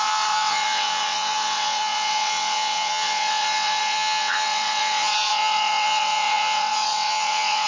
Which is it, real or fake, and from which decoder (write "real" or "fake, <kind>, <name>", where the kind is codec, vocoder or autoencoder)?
fake, vocoder, WaveNeXt